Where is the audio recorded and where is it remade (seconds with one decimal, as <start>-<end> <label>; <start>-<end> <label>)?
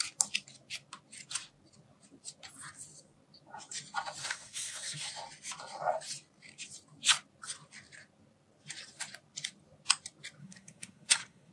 0.0-4.2 recorded; 4.2-5.1 remade; 5.1-10.4 recorded; 10.4-11.5 remade